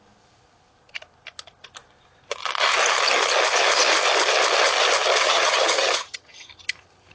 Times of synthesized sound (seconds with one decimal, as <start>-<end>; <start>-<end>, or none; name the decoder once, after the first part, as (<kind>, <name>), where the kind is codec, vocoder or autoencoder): 5.2-6.5 (vocoder, HiFi-GAN)

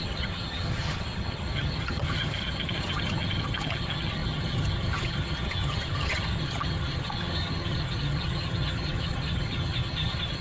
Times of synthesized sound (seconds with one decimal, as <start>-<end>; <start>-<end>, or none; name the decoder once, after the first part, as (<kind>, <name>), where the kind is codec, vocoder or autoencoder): 0.0-10.4 (vocoder, HiFi-GAN)

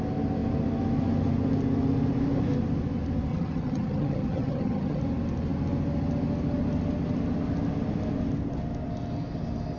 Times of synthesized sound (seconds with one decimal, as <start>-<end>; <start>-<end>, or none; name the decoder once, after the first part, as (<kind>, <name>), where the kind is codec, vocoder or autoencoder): 3.3-5.0 (vocoder, HiFi-GAN)

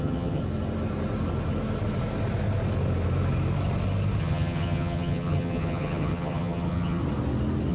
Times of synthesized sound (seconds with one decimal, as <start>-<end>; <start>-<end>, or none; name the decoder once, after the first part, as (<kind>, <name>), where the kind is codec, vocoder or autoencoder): 0.0-0.4 (vocoder, HiFi-GAN); 4.2-7.0

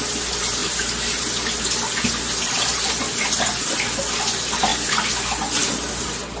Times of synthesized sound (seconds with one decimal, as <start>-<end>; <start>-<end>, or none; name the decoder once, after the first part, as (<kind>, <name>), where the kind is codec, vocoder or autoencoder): none

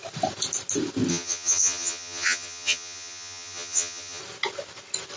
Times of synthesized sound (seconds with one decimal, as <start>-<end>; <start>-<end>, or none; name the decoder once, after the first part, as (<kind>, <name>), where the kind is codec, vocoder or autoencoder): 1.1-4.2 (vocoder, HiFi-GAN)